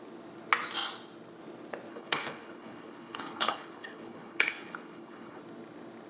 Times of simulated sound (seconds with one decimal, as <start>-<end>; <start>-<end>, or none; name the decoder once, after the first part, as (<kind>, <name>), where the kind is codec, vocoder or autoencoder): 1.9-5.4 (codec, HILCodec)